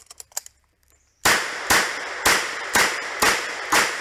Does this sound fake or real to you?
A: fake